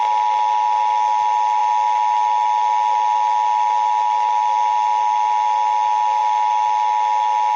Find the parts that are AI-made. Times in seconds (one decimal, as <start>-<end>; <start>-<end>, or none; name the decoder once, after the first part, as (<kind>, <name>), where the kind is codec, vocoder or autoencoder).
none